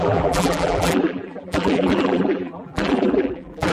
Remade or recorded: remade